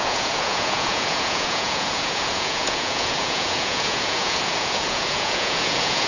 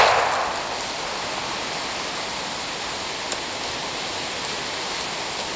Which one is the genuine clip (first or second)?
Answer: second